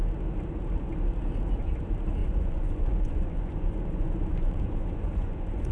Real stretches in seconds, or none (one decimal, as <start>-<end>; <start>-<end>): 0.0-2.2